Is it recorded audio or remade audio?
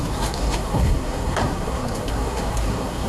remade